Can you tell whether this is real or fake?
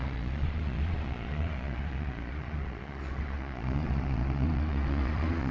fake